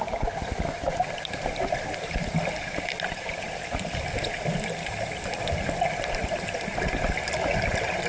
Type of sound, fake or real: real